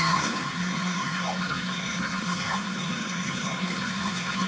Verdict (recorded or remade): remade